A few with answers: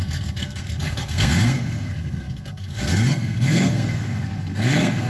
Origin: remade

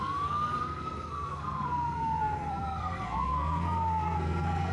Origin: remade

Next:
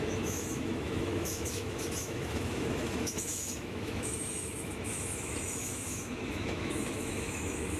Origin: remade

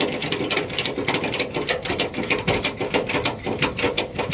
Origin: recorded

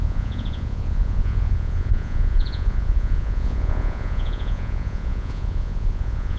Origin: remade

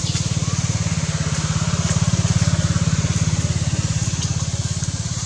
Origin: recorded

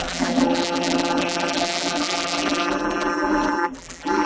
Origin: remade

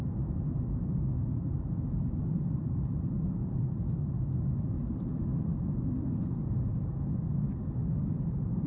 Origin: remade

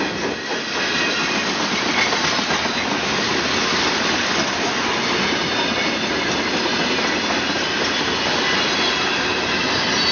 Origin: recorded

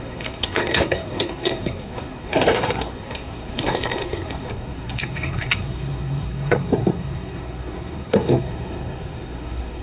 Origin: remade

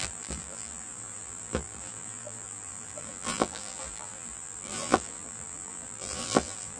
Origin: remade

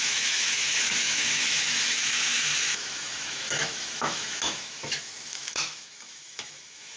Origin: remade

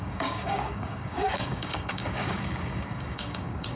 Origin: remade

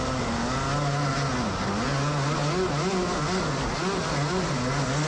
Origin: recorded